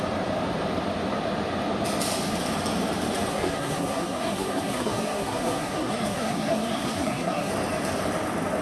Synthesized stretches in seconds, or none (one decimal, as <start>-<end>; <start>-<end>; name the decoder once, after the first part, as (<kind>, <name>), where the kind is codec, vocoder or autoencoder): 3.3-7.5 (codec, SNAC)